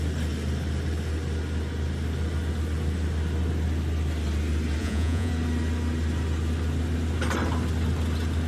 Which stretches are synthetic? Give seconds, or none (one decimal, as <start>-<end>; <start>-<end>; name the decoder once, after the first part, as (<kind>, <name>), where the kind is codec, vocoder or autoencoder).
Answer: 4.8-5.3 (vocoder, Vocos)